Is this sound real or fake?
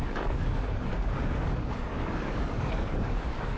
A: fake